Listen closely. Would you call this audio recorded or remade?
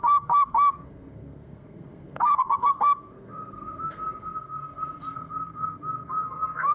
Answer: remade